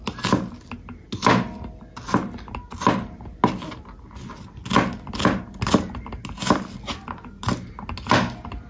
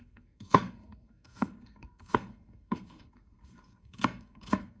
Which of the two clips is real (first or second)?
first